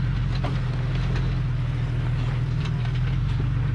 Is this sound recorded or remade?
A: recorded